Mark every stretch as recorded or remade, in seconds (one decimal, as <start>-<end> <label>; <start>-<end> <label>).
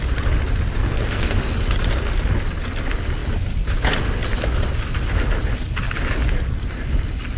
0.0-0.8 recorded; 0.8-1.4 remade; 1.4-7.4 recorded